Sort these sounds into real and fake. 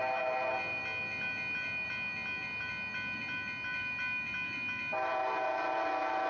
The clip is real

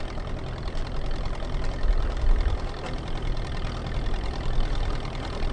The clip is fake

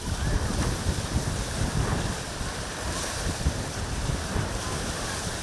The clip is fake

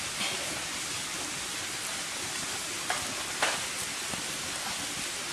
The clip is real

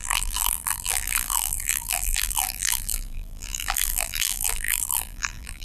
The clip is fake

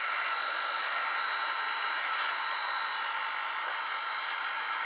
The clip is real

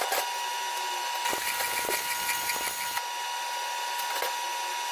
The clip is real